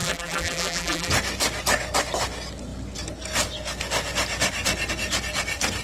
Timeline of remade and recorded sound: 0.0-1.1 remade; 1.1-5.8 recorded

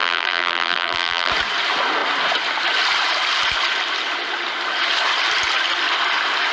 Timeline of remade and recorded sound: 0.0-1.3 remade; 1.3-6.5 recorded

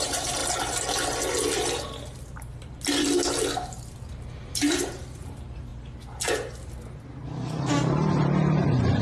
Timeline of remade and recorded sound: 0.0-0.4 remade; 0.4-3.5 recorded; 3.5-5.7 remade; 5.7-8.2 recorded; 8.2-9.0 remade

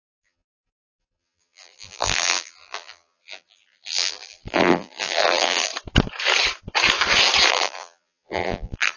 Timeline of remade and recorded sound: 0.0-5.7 remade; 5.7-7.5 recorded; 7.5-9.0 remade

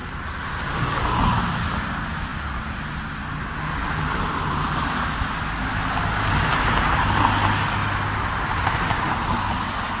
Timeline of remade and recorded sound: 0.0-1.4 remade; 1.4-7.8 recorded; 7.8-9.4 remade; 9.4-10.0 recorded